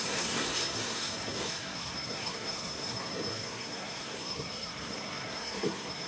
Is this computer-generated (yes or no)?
yes